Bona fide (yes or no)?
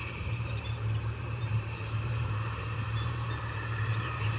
no